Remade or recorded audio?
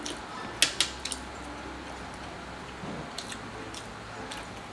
recorded